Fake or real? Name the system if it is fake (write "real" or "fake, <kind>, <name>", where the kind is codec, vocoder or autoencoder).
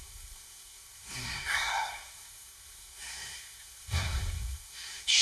fake, codec, SNAC